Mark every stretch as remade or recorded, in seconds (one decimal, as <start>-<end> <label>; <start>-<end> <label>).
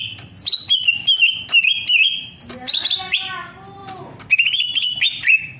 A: 0.0-3.8 recorded; 3.8-4.3 remade; 4.3-5.6 recorded